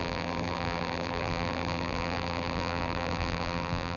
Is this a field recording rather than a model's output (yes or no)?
no